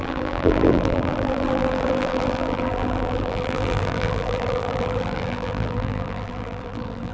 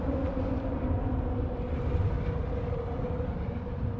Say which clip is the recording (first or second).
second